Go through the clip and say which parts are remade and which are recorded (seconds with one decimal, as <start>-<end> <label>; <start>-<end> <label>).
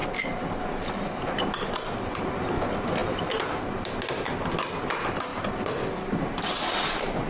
0.0-7.3 recorded